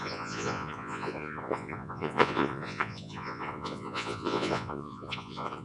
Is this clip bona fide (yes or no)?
no